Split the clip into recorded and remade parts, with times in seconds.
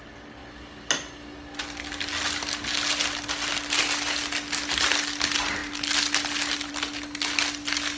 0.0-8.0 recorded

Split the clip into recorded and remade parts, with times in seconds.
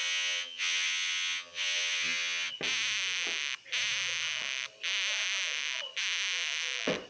0.0-2.5 remade; 2.5-7.1 recorded